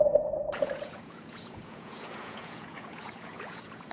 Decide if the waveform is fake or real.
fake